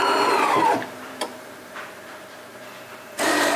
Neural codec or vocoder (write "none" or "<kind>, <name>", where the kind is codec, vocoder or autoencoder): vocoder, BigVGAN v2